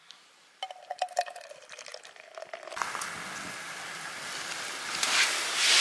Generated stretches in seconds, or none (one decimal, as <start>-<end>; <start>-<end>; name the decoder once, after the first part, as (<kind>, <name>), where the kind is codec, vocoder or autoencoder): none